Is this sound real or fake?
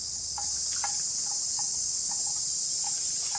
real